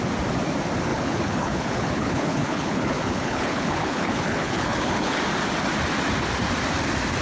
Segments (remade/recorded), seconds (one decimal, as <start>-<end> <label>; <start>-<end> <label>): 0.0-0.9 recorded; 0.9-5.2 remade; 5.2-7.2 recorded